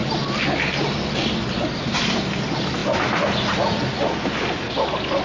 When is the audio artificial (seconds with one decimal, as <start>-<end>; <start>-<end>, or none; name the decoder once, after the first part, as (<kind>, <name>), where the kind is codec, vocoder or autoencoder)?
none